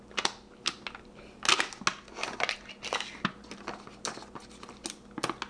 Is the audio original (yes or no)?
yes